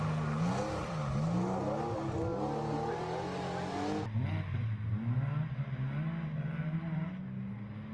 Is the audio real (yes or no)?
yes